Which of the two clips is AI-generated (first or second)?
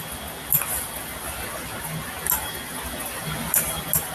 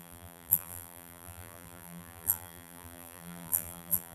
second